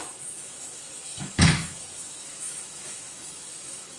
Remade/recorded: remade